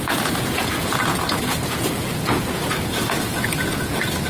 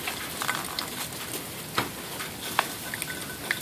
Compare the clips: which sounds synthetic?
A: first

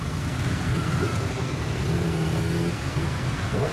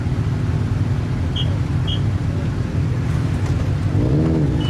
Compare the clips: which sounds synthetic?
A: first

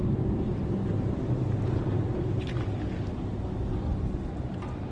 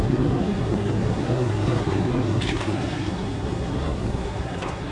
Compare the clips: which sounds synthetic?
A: second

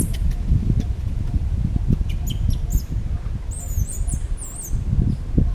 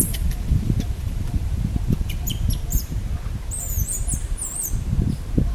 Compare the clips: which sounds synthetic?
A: second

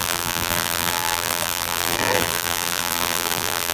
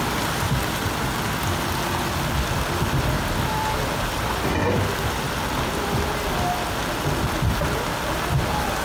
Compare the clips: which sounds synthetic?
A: first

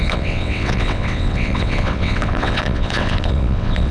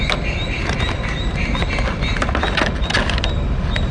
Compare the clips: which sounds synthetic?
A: first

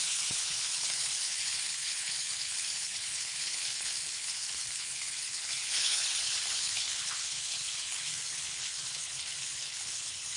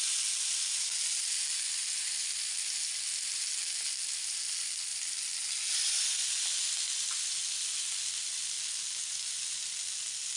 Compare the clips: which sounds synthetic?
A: first